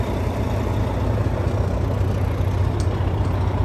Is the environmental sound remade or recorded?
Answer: recorded